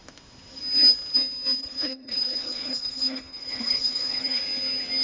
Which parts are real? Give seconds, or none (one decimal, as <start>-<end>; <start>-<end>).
0.0-1.6; 4.4-5.0